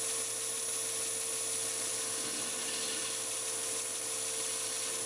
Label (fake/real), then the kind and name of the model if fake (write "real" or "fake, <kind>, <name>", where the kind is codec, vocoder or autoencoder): real